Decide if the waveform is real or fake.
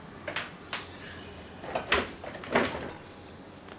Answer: real